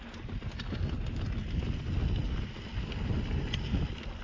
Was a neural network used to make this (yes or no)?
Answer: no